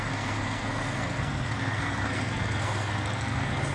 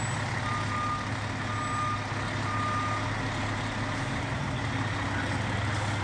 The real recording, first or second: second